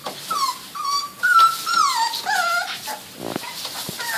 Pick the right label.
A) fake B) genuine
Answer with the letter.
B